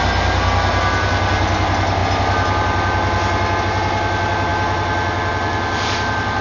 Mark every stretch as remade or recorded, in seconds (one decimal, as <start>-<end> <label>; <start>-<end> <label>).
0.0-6.4 recorded